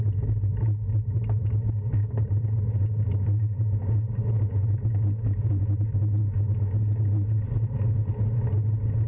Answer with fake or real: real